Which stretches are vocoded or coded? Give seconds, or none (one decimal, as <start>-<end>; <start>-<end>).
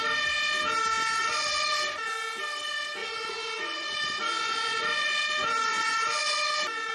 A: 1.2-2.1; 3.0-6.9